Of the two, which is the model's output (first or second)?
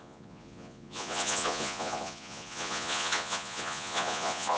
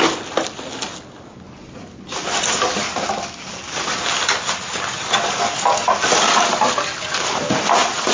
first